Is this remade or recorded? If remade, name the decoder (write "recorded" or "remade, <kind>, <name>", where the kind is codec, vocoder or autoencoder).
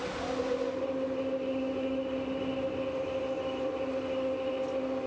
recorded